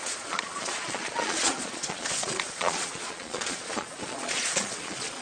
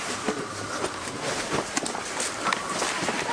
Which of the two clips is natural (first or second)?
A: second